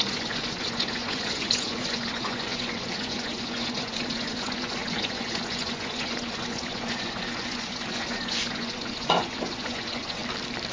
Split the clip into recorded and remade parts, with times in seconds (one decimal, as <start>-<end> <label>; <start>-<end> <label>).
0.0-10.2 remade; 10.2-10.7 recorded